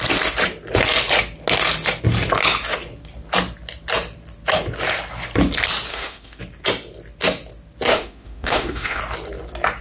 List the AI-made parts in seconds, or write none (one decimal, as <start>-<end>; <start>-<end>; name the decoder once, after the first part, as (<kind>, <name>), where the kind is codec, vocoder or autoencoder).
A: 5.9-6.4 (autoencoder, DAC-VAE); 7.9-9.0